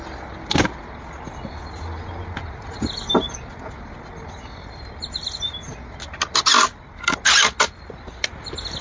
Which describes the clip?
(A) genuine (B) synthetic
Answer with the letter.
A